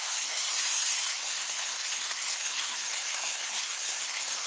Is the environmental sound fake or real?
fake